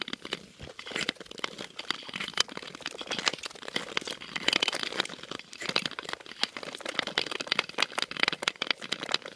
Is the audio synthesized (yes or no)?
no